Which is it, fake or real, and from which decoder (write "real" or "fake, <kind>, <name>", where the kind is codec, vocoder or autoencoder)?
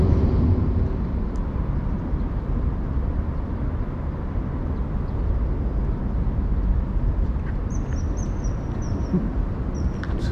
real